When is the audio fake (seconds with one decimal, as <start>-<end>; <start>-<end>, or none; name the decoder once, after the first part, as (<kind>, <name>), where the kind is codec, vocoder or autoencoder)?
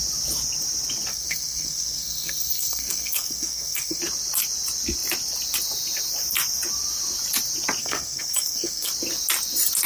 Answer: 1.1-4.0 (codec, SNAC); 7.8-8.9